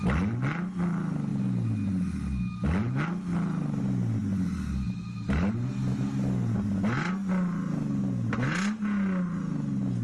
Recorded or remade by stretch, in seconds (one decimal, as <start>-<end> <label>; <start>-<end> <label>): 0.0-10.0 recorded